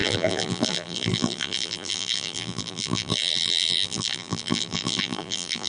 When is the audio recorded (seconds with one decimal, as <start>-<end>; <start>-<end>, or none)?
none